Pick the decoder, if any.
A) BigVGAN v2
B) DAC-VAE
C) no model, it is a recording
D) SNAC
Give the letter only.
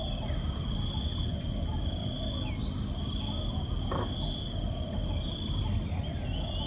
C